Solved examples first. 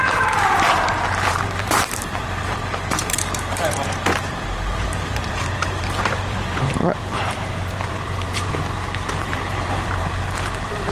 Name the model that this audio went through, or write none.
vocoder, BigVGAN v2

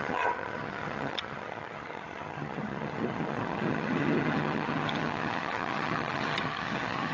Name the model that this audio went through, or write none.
vocoder, HiFi-GAN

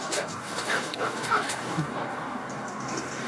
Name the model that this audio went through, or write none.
codec, DAC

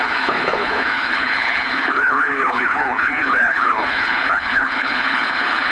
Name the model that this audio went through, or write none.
codec, HILCodec